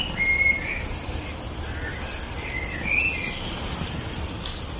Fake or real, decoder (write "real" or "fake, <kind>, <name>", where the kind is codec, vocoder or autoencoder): real